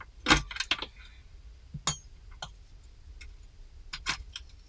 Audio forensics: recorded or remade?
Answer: recorded